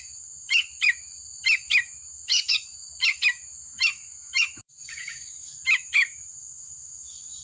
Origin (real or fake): fake